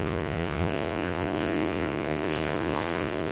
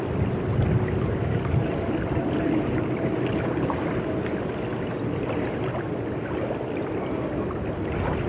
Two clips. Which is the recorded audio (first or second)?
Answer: second